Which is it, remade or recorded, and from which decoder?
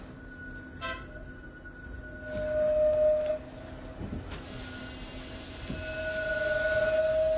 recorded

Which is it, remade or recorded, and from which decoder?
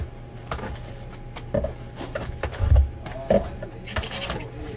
recorded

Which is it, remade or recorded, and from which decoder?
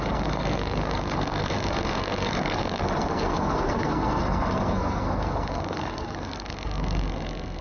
remade, codec, SNAC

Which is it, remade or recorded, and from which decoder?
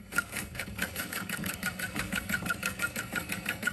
remade, codec, SNAC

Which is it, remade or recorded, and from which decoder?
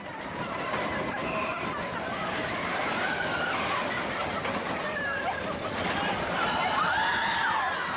recorded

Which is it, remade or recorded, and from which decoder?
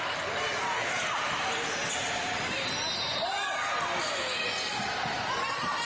recorded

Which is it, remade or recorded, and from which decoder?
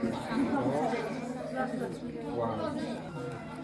recorded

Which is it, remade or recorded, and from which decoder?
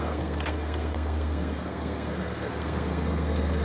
remade, codec, SNAC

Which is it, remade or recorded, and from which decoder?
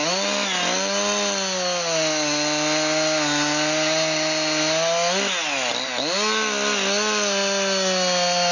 recorded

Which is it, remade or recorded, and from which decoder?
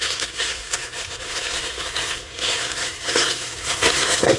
remade, codec, SNAC